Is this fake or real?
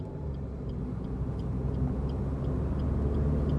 real